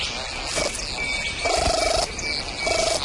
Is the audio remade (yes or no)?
no